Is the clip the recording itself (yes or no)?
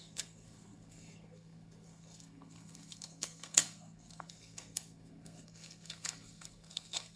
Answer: no